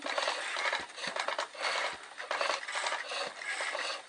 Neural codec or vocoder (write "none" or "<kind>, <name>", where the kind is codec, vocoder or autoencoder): none